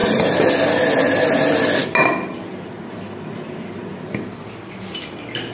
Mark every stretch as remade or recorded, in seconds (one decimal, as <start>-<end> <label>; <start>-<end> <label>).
0.0-0.5 remade; 0.5-5.5 recorded